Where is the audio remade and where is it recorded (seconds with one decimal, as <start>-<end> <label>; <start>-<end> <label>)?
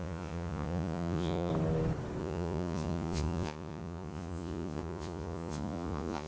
0.0-1.5 remade; 1.5-2.2 recorded; 2.2-6.3 remade